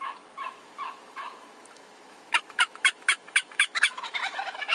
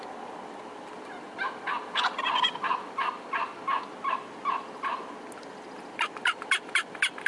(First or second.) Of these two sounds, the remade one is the first